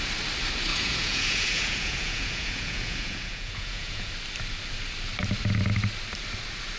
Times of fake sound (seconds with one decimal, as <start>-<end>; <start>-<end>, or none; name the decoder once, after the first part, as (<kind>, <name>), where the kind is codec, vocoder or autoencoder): 0.7-4.1 (vocoder, Vocos)